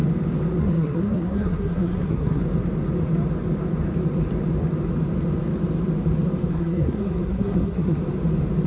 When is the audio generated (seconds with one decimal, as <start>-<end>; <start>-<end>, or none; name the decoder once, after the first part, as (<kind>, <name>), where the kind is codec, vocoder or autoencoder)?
0.6-2.4 (codec, SNAC); 6.5-8.0